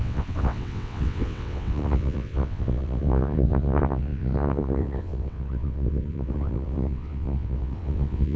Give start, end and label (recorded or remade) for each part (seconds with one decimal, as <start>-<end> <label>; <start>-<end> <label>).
0.0-8.4 remade